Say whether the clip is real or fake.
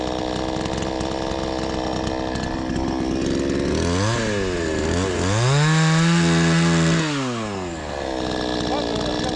real